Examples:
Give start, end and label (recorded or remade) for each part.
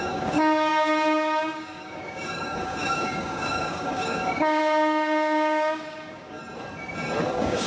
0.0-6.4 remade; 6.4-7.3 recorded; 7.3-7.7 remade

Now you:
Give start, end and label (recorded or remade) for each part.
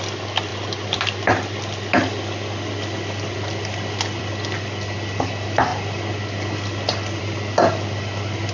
0.0-8.5 recorded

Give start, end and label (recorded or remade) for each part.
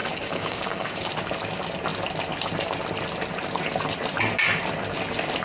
0.0-1.1 remade; 1.1-5.4 recorded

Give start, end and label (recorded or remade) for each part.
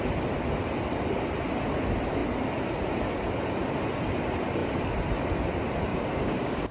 0.0-5.9 recorded; 5.9-6.7 remade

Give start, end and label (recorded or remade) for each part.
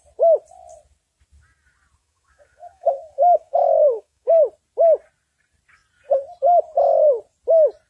0.0-2.0 recorded; 2.0-4.4 remade; 4.4-7.9 recorded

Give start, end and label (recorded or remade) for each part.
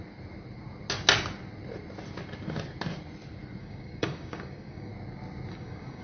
0.0-3.6 recorded; 3.6-4.9 remade; 4.9-5.5 recorded; 5.5-6.0 remade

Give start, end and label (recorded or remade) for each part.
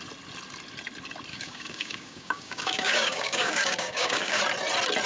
0.0-1.3 recorded; 1.3-4.4 remade; 4.4-5.1 recorded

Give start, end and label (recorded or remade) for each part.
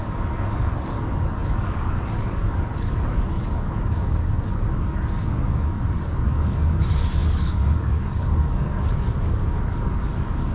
0.0-10.5 remade